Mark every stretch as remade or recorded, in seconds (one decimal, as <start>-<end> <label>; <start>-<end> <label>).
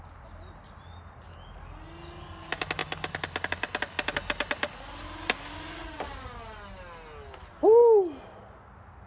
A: 0.0-9.1 recorded